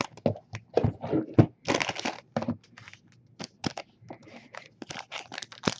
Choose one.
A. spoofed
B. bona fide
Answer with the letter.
B